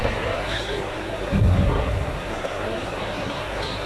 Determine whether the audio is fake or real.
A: fake